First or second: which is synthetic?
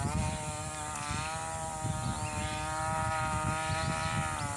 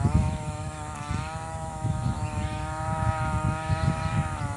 second